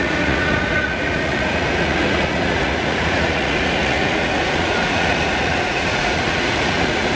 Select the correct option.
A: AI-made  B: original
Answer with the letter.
A